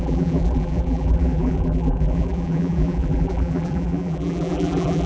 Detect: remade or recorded remade